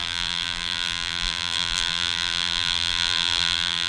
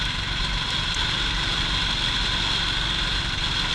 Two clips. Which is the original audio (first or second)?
second